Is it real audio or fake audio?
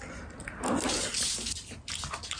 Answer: real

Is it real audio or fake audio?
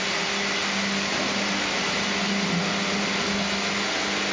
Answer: real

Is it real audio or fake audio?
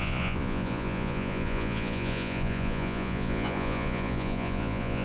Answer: fake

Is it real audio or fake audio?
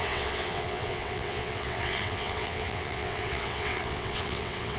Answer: fake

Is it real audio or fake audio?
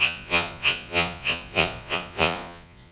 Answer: fake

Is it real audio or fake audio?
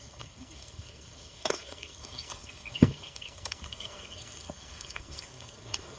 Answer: fake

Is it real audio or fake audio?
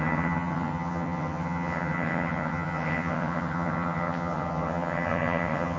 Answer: fake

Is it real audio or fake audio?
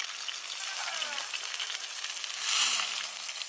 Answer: real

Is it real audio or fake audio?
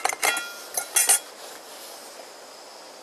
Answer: real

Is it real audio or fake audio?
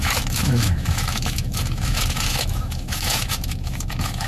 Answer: fake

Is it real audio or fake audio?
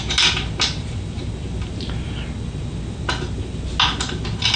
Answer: real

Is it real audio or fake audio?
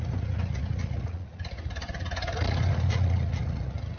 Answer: fake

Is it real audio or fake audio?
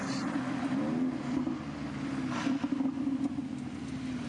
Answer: real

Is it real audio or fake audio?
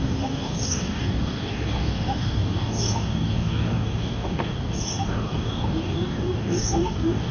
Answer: fake